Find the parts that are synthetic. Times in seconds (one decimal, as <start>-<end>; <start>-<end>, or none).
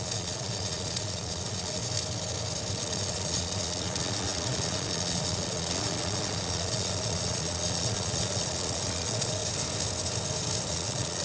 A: 0.0-1.8; 2.7-9.4; 10.7-11.2